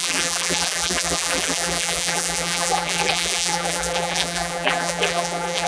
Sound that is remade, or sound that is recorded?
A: remade